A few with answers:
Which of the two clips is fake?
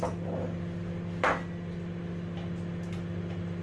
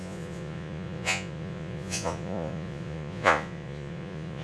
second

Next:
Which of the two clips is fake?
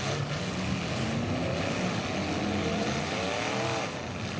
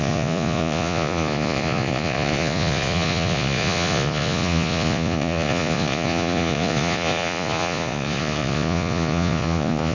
second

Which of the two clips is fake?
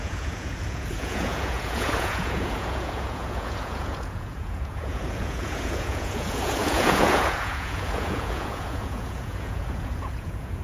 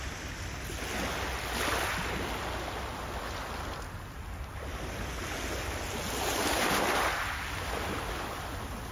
first